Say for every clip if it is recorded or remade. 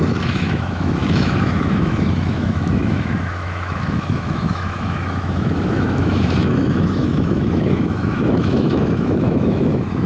remade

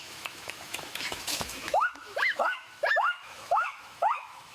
remade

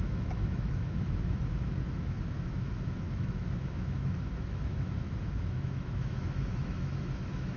remade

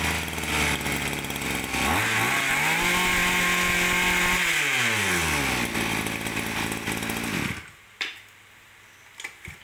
recorded